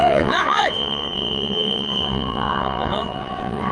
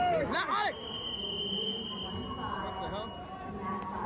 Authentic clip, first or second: second